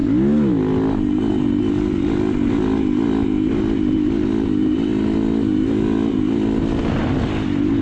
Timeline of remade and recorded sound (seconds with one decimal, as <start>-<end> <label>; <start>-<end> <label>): 0.0-7.8 recorded